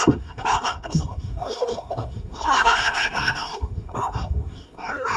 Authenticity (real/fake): fake